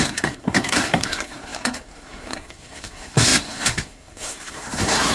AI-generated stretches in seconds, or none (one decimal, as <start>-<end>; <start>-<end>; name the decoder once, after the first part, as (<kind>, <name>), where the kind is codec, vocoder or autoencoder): 0.0-5.1 (codec, SNAC)